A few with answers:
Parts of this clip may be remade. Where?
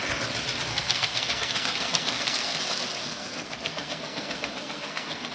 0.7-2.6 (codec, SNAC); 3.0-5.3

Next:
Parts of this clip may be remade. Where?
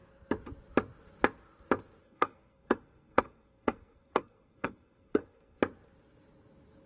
2.0-5.6 (codec, SNAC)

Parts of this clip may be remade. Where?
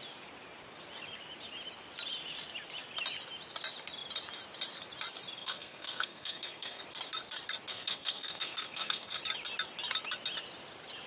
5.4-6.8 (codec, SNAC); 7.7-9.2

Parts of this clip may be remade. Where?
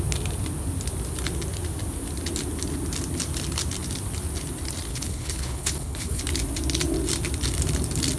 4.9-6.2 (codec, HILCodec)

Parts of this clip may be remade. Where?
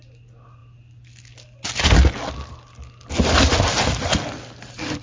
none